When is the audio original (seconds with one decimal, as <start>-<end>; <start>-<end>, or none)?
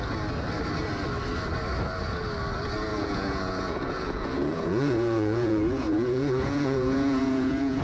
0.0-2.9